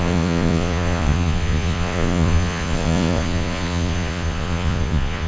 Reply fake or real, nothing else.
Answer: fake